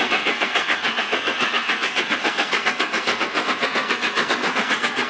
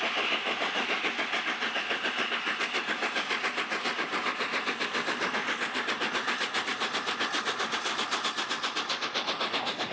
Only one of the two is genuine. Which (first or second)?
second